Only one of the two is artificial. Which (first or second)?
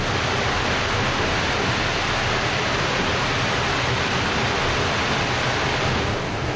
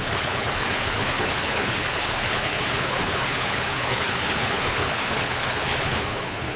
second